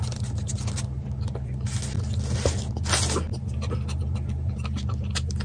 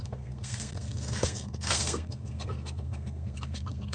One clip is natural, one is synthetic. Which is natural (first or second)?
first